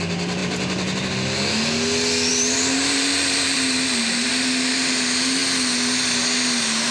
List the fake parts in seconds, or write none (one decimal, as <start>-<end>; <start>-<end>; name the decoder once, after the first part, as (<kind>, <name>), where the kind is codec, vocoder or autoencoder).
2.3-4.3 (vocoder, BigVGAN v2)